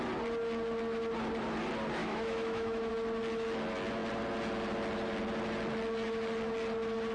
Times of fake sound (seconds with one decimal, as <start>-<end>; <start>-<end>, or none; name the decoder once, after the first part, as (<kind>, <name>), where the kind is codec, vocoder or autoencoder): 2.0-2.9 (autoencoder, DAC-VAE)